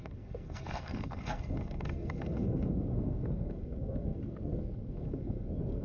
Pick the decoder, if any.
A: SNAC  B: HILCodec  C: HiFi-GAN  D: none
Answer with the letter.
A